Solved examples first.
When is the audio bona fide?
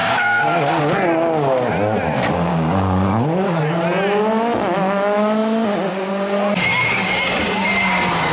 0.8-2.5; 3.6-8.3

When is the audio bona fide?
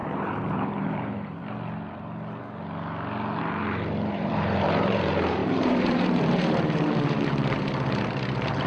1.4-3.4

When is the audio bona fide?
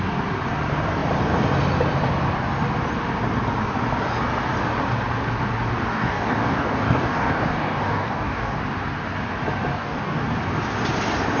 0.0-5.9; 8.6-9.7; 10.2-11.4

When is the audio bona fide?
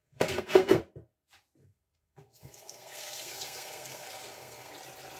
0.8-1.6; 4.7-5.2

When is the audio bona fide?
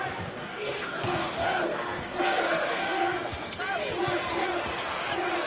0.0-0.4; 3.6-5.5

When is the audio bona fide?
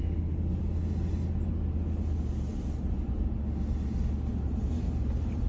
0.0-2.5; 3.1-4.3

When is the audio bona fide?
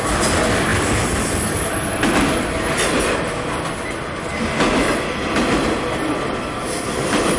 0.0-7.4